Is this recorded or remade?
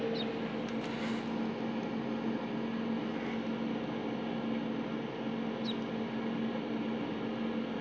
recorded